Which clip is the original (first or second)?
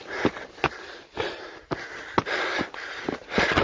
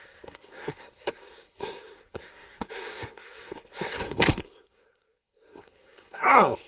first